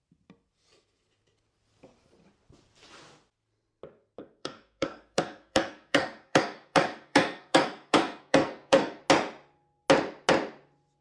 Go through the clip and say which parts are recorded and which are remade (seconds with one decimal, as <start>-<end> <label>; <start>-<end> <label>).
0.0-4.2 recorded; 4.2-9.0 remade; 9.0-11.0 recorded